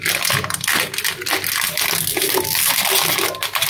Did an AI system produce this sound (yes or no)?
no